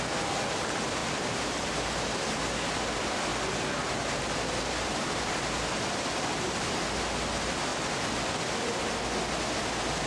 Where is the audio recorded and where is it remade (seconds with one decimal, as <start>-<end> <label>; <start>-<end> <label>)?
0.0-1.0 recorded; 1.0-2.2 remade; 2.2-10.1 recorded